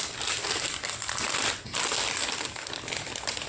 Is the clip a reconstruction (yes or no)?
no